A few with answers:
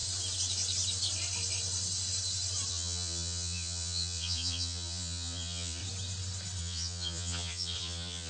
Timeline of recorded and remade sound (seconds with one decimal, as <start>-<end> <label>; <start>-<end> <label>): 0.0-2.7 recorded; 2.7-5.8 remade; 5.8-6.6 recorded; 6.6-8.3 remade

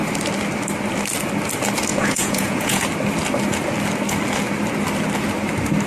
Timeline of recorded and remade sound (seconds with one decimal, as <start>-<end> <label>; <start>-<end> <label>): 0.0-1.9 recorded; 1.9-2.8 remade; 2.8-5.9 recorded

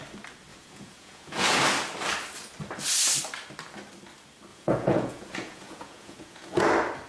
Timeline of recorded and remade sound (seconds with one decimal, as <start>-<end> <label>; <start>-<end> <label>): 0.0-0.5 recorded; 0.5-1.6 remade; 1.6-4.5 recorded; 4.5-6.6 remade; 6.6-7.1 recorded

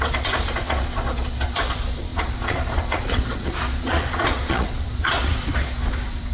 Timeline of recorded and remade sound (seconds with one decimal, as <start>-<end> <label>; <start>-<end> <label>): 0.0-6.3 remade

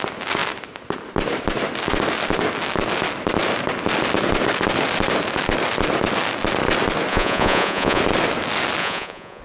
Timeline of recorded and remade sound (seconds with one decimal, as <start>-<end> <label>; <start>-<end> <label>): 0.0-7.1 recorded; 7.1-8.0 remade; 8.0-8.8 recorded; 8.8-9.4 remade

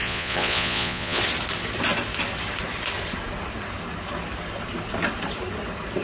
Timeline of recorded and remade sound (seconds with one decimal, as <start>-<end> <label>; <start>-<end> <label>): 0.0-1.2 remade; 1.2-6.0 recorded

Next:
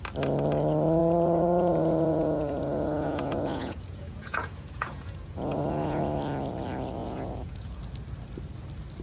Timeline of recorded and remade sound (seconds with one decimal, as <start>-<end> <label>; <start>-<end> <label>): 0.0-1.0 recorded; 1.0-6.0 remade; 6.0-7.0 recorded; 7.0-7.8 remade; 7.8-9.0 recorded